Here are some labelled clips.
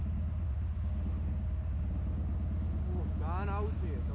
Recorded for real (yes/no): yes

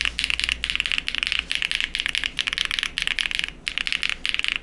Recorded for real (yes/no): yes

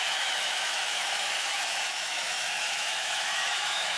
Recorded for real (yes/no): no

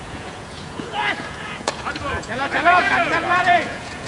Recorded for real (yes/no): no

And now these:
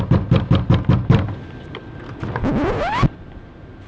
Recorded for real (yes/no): yes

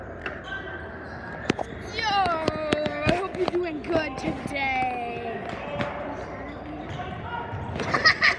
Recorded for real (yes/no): yes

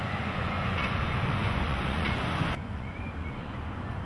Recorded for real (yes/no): no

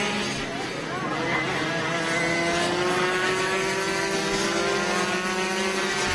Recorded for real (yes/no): yes